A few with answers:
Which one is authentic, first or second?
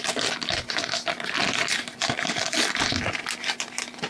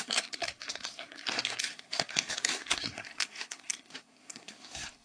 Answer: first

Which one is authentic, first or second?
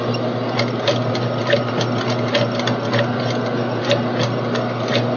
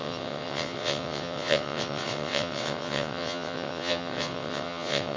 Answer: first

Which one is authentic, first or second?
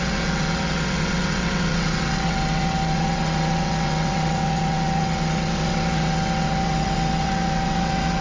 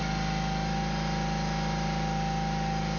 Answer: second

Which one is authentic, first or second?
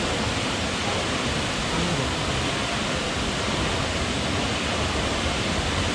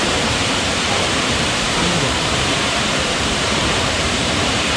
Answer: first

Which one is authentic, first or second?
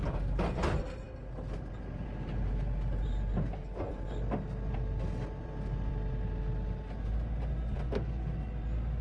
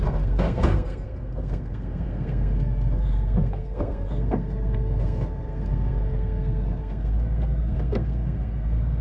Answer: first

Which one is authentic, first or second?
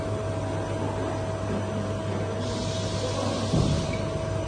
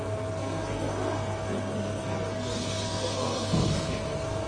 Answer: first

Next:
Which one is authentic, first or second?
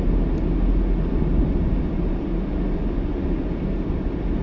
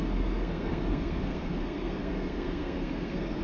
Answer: first